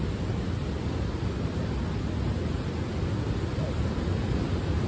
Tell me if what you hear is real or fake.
real